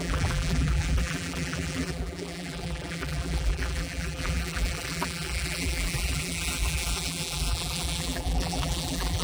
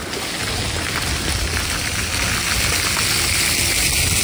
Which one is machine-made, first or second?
first